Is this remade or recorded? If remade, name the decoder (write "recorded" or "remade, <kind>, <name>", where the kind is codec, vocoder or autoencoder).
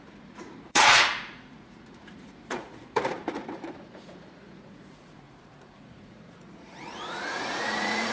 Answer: remade, vocoder, Vocos